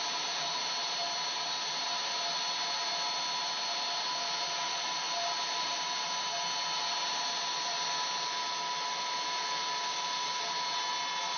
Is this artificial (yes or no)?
no